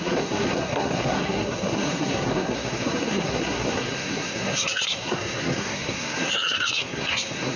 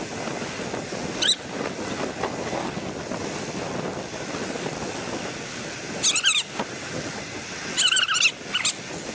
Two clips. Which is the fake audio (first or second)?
first